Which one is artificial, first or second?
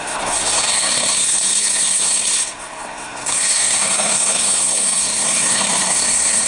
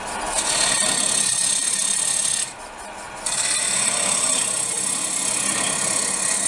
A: first